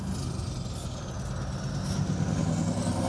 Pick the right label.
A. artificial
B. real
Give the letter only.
B